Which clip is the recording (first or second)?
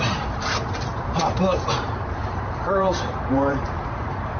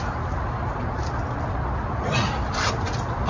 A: second